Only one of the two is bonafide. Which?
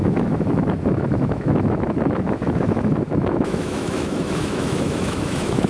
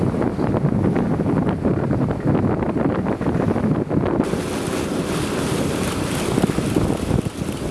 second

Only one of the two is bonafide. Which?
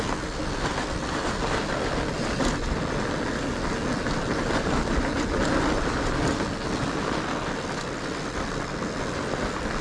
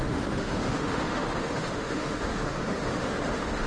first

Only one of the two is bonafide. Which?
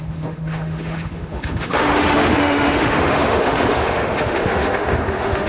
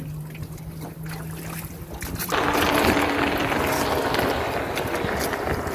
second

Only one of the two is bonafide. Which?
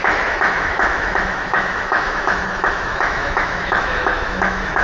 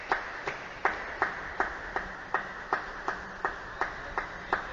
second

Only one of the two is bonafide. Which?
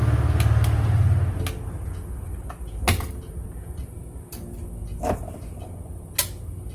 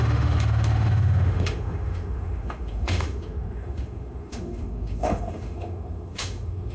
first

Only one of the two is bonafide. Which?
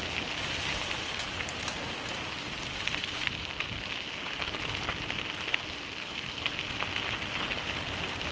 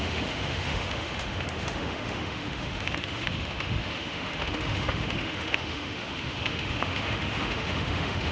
first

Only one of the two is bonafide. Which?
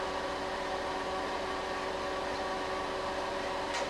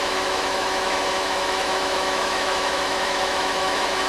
first